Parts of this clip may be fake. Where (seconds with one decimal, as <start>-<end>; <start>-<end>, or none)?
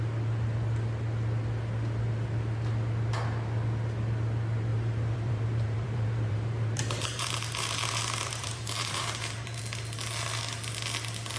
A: 4.7-9.6